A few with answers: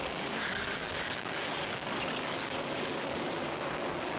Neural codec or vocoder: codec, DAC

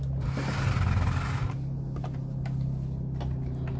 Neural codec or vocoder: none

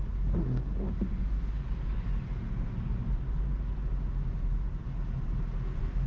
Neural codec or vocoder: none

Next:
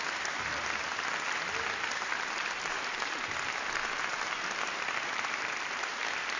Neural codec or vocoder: none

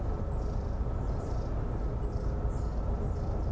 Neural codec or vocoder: none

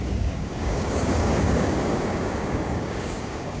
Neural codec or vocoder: codec, DAC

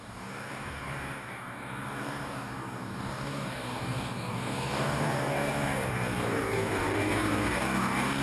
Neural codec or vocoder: codec, DAC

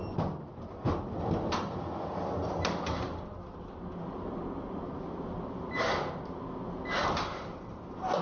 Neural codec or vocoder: none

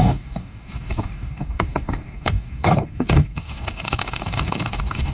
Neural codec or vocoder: codec, DAC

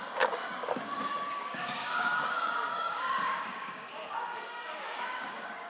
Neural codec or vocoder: codec, DAC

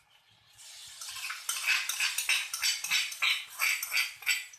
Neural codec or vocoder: none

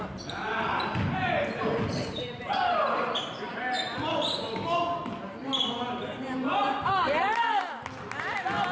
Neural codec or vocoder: none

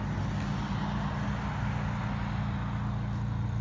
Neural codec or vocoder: none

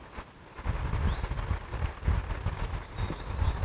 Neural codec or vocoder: none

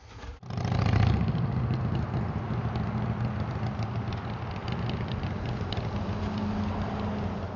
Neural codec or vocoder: none